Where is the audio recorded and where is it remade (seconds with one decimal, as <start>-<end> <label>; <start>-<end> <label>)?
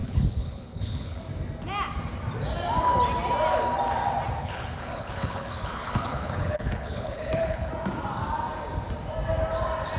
0.0-1.2 remade; 1.2-4.4 recorded; 4.4-7.7 remade; 7.7-10.0 recorded